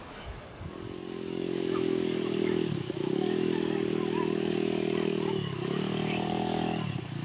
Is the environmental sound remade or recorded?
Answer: remade